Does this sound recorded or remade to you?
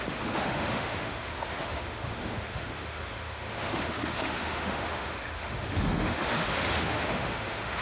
remade